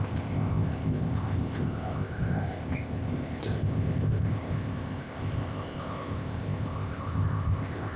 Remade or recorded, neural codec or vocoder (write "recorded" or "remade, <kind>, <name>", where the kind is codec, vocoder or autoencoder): remade, codec, ZipCodec